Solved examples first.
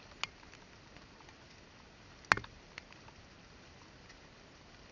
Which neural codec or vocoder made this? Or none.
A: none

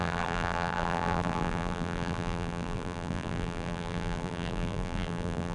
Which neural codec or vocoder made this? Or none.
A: vocoder, BigVGAN v2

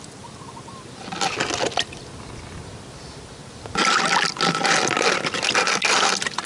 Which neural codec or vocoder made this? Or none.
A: none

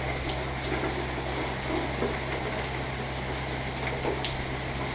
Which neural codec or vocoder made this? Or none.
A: none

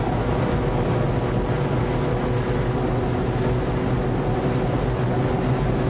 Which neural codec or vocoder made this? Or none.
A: none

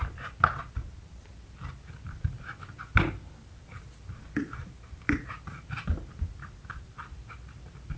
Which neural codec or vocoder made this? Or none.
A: none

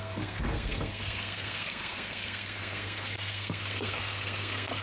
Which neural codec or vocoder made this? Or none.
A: codec, SNAC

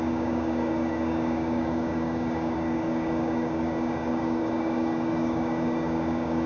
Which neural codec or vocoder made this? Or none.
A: codec, DAC